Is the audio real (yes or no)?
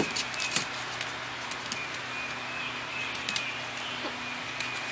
yes